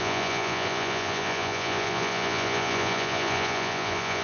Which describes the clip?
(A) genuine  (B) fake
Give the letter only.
B